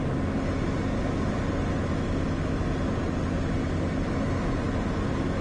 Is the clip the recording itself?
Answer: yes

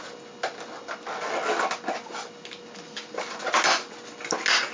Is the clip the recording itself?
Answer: yes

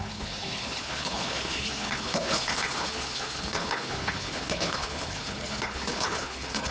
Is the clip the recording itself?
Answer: no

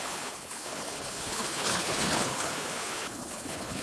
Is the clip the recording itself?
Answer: no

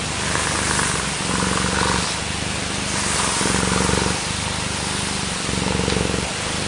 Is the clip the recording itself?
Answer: yes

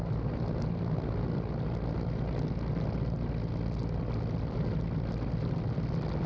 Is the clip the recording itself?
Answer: yes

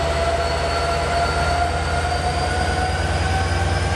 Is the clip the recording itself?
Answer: yes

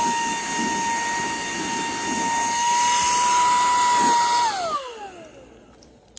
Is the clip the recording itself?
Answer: yes